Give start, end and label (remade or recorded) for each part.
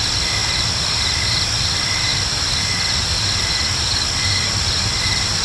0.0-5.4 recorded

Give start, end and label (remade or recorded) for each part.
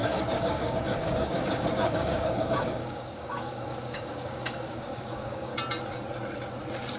0.0-5.5 remade; 5.5-7.0 recorded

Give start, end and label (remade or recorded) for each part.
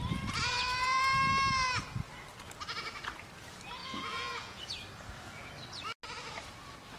0.0-0.5 recorded; 0.5-1.0 remade; 1.0-3.8 recorded; 3.8-4.6 remade; 4.6-7.0 recorded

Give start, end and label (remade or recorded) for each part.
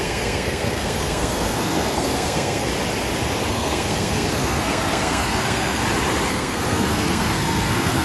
0.0-2.7 remade; 2.7-3.5 recorded; 3.5-5.8 remade; 5.8-6.3 recorded; 6.3-8.0 remade